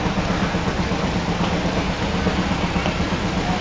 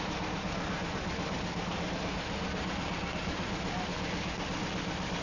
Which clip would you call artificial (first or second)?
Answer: second